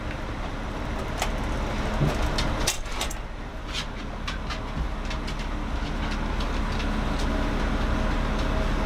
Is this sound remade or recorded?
recorded